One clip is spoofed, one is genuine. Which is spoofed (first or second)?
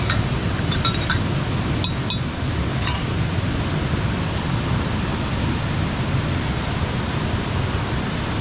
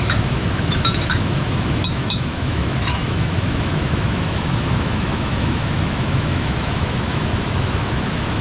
second